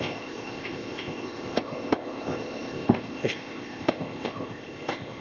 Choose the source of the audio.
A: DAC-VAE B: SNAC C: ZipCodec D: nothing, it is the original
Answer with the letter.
C